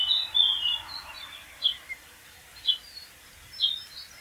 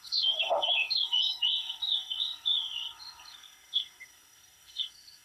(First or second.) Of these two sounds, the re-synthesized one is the second